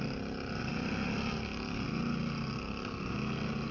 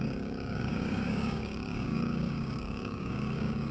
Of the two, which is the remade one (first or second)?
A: second